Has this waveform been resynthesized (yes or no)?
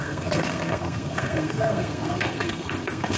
yes